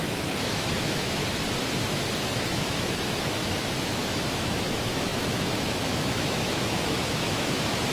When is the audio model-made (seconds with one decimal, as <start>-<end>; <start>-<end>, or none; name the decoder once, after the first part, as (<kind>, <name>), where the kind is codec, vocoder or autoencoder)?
0.0-1.2 (autoencoder, DAC-VAE); 1.9-7.9